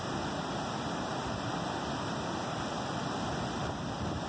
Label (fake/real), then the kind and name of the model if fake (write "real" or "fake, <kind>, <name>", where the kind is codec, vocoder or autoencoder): real